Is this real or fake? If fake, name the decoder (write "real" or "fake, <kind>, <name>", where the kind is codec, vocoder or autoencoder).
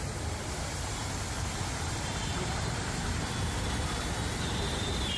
fake, vocoder, BigVGAN v2